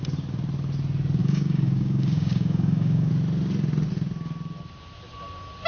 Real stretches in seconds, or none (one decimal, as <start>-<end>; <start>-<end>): 0.0-1.2; 3.1-5.7